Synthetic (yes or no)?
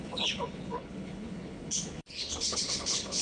yes